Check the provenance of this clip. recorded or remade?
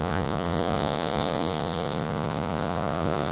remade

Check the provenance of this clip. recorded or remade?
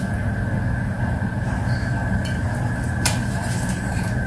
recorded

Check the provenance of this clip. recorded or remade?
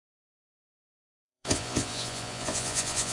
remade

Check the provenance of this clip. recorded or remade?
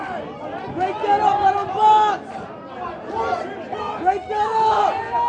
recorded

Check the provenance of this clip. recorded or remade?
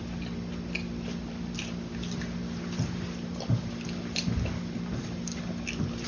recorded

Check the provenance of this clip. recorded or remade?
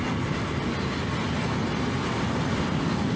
recorded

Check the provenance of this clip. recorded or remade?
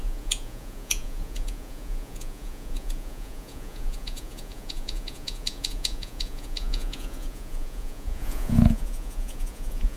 remade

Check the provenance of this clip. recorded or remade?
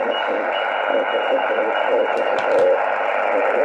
recorded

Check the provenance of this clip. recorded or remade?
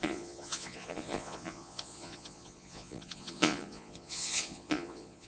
remade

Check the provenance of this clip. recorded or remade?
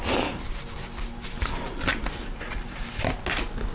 recorded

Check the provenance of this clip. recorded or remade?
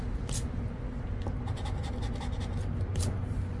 recorded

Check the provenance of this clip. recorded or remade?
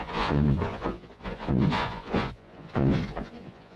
remade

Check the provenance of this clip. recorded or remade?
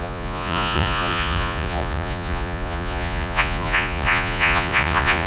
remade